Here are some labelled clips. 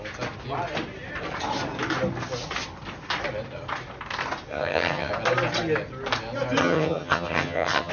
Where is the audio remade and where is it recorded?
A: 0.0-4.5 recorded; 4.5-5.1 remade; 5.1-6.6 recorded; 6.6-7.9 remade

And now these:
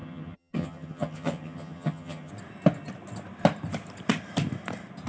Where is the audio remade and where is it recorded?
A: 0.0-2.3 remade; 2.3-5.1 recorded

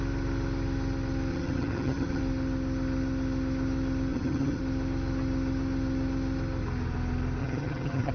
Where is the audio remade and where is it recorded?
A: 0.0-1.3 recorded; 1.3-2.2 remade; 2.2-4.1 recorded; 4.1-4.6 remade; 4.6-7.4 recorded; 7.4-8.1 remade